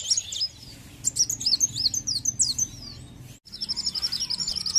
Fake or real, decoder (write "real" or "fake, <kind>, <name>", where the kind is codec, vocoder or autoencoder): real